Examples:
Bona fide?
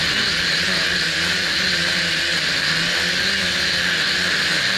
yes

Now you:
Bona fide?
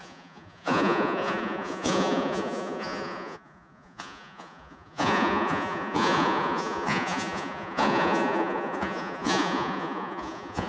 no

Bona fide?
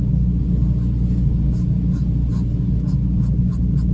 yes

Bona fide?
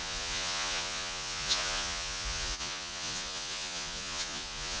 no